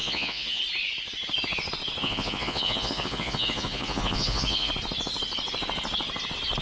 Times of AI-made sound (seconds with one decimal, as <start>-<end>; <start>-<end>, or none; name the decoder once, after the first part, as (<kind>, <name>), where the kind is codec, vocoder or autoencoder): 0.0-0.6 (vocoder, Vocos); 2.0-4.7